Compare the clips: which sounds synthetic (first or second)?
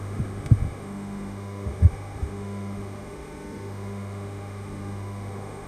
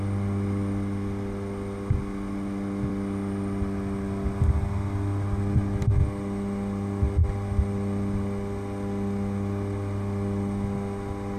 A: first